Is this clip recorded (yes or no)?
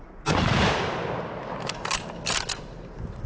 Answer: yes